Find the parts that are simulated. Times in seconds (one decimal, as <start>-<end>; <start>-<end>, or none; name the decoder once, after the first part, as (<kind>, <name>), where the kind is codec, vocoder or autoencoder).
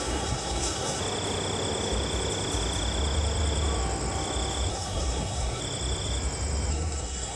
0.0-1.0 (codec, SNAC); 4.7-5.6; 6.7-7.4